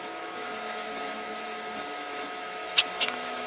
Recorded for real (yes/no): no